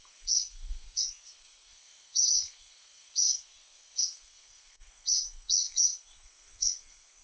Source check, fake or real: fake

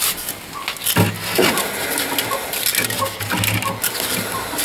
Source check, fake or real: real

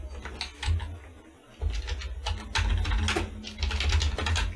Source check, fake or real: real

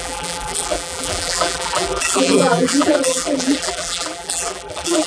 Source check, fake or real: fake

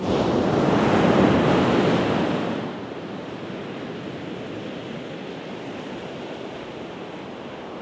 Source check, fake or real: real